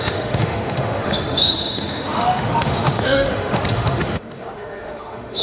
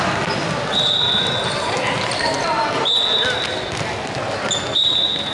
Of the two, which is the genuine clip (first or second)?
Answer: second